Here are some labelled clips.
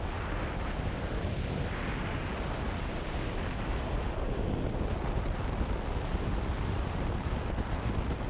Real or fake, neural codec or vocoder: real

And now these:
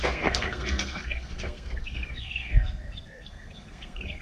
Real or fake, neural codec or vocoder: fake, codec, SNAC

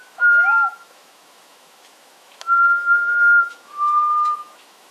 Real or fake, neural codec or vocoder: fake, autoencoder, DAC-VAE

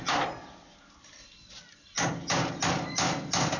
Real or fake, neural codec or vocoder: real